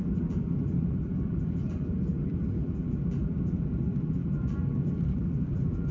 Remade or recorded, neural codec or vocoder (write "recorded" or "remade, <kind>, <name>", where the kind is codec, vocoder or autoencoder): remade, vocoder, BigVGAN v2